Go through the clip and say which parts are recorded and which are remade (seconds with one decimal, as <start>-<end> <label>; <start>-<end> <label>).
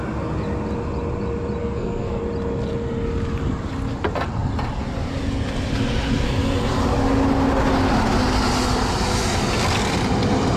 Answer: 0.0-1.6 recorded; 1.6-2.2 remade; 2.2-10.6 recorded